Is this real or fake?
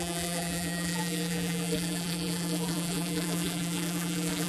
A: fake